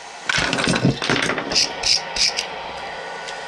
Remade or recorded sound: recorded